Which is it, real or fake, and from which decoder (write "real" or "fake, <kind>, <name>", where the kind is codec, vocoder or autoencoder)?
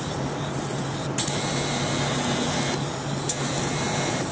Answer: real